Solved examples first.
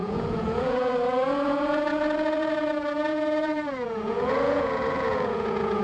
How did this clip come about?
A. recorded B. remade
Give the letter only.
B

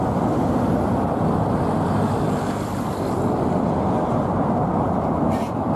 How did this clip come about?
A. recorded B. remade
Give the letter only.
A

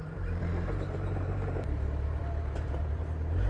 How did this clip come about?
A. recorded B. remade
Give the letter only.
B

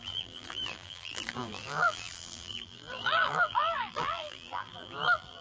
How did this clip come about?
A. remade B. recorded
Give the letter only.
A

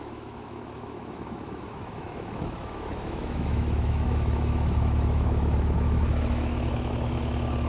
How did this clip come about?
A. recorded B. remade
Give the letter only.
B